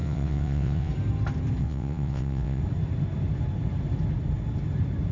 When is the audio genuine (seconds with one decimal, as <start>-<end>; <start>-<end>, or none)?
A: 0.9-1.6; 2.6-5.1